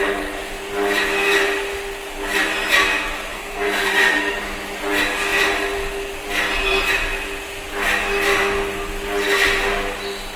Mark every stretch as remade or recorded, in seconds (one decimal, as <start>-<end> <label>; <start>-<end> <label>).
0.0-3.3 recorded; 3.3-4.4 remade; 4.4-10.4 recorded